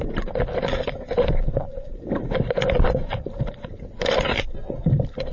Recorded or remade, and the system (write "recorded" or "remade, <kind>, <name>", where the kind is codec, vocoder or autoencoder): remade, vocoder, BigVGAN v2